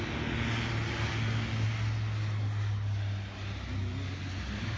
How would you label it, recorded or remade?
recorded